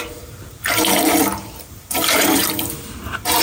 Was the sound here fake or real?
fake